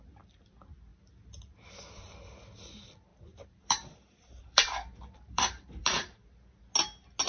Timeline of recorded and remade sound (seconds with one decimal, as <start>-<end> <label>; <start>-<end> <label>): 0.0-3.1 recorded; 3.1-6.6 remade; 6.6-7.3 recorded